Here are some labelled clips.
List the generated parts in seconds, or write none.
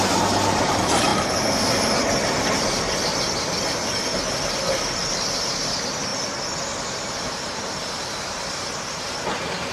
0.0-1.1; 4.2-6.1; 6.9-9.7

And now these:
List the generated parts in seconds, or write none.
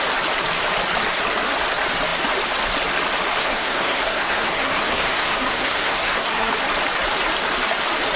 3.4-6.5